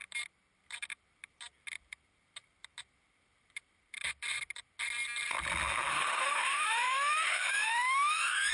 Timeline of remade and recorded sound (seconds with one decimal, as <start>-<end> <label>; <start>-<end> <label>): 0.0-5.9 recorded; 5.9-8.5 remade